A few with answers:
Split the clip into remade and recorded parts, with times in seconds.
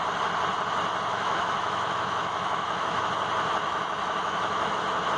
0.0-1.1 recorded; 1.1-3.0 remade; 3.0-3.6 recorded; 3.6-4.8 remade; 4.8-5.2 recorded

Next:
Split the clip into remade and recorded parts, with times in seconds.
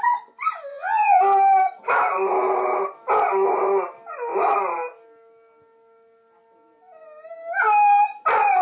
0.0-0.7 recorded; 0.7-1.2 remade; 1.2-8.6 recorded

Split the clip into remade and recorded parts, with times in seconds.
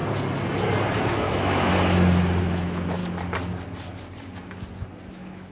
0.0-1.0 recorded; 1.0-1.7 remade; 1.7-2.4 recorded; 2.4-3.0 remade; 3.0-5.1 recorded; 5.1-5.5 remade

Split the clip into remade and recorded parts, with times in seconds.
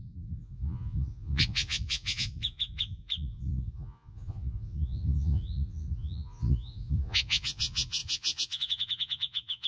0.0-9.7 remade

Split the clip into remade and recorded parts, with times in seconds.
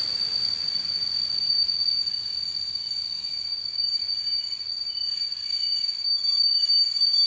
0.0-7.3 recorded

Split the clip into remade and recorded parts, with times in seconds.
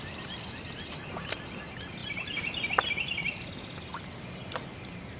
0.0-5.2 recorded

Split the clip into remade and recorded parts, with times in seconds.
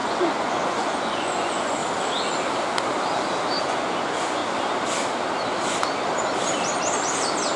0.0-1.8 remade; 1.8-3.6 recorded; 3.6-4.4 remade; 4.4-7.6 recorded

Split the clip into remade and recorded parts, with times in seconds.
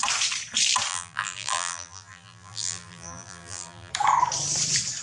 0.0-0.9 recorded; 0.9-3.9 remade; 3.9-5.0 recorded